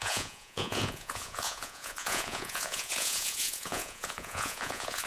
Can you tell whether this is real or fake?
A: fake